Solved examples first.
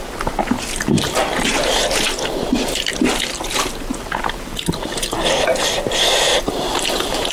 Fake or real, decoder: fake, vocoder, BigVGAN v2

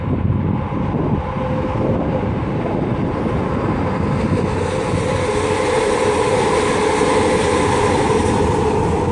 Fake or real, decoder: real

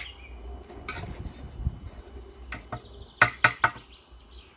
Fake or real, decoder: real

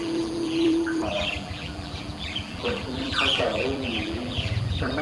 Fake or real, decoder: fake, vocoder, BigVGAN v2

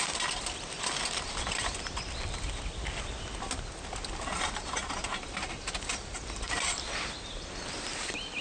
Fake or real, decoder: real